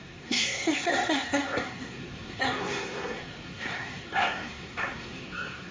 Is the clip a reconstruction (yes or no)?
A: yes